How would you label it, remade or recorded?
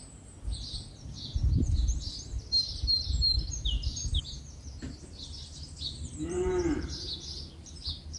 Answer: remade